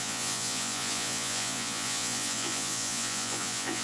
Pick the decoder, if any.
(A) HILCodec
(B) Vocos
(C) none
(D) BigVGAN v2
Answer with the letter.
B